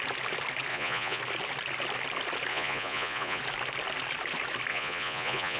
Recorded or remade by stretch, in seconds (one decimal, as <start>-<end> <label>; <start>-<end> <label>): 0.0-0.7 recorded; 0.7-1.2 remade; 1.2-2.5 recorded; 2.5-3.4 remade; 3.4-4.7 recorded; 4.7-5.6 remade